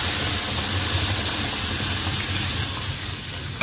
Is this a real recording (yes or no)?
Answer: yes